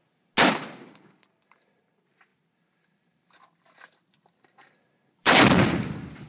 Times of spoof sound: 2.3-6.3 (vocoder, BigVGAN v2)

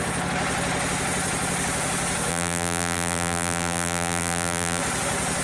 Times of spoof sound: 2.3-4.8 (vocoder, BigVGAN v2)